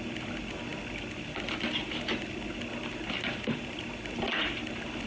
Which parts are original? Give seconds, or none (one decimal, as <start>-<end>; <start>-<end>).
0.0-5.1